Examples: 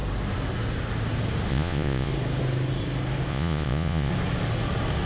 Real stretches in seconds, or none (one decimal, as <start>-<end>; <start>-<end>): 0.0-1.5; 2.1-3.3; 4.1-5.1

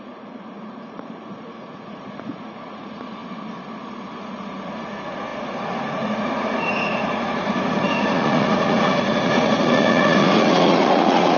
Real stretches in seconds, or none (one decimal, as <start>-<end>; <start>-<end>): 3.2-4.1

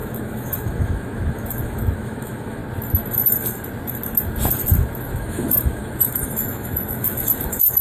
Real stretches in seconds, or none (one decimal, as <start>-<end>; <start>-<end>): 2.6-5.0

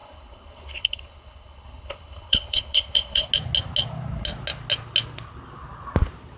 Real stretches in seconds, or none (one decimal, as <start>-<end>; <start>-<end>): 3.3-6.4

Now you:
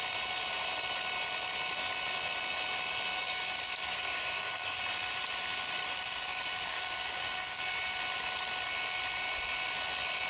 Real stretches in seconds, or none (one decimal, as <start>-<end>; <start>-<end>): 0.0-3.1; 4.8-5.8; 7.6-10.3